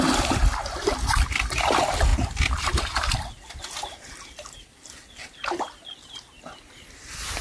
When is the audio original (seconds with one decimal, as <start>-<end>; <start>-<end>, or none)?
2.1-2.9